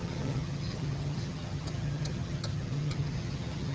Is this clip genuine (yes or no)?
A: no